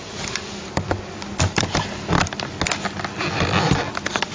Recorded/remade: recorded